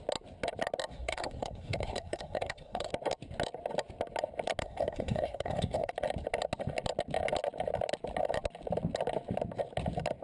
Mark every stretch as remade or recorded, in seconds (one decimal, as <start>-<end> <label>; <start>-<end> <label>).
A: 0.0-0.9 recorded; 0.9-2.9 remade; 2.9-4.6 recorded; 4.6-5.9 remade; 5.9-10.2 recorded